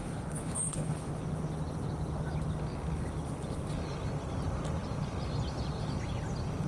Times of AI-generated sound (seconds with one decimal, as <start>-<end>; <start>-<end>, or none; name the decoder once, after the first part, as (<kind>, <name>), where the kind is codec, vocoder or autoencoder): 0.0-1.1 (codec, HILCodec)